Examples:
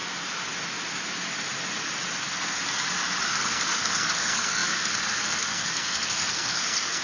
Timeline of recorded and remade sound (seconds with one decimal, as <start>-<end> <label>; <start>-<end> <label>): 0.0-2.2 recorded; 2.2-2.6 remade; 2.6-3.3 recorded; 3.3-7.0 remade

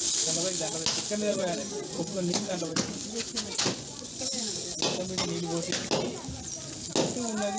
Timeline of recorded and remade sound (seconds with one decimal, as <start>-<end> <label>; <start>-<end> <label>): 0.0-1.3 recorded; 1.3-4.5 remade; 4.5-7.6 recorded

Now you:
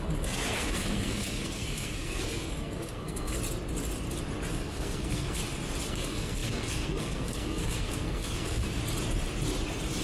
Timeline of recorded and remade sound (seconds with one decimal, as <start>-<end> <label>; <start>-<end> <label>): 0.0-3.4 remade; 3.4-4.5 recorded; 4.5-5.4 remade; 5.4-5.9 recorded; 5.9-8.8 remade; 8.8-10.0 recorded

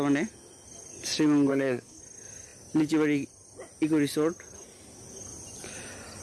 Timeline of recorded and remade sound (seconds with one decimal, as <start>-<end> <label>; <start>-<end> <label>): 0.0-1.5 recorded; 1.5-2.0 remade; 2.0-6.2 recorded

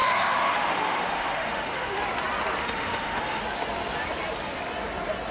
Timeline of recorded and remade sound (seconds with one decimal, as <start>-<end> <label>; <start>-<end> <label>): 0.0-2.0 remade; 2.0-2.6 recorded; 2.6-3.4 remade; 3.4-5.3 recorded